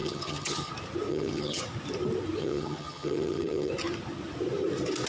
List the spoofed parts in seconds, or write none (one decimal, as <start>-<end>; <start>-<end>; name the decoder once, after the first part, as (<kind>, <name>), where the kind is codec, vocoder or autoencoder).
0.0-0.7 (vocoder, HiFi-GAN); 1.1-1.6; 2.4-3.7